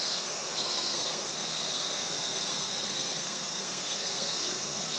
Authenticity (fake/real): fake